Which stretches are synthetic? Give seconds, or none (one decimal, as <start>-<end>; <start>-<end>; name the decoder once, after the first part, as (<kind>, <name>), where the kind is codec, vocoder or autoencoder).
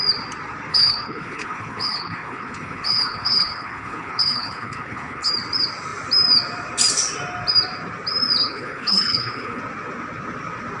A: 0.7-5.3 (codec, HILCodec); 8.4-9.6